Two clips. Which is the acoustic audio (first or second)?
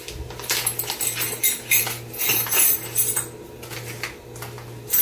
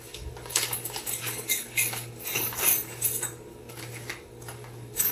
first